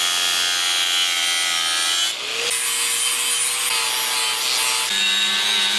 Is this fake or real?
real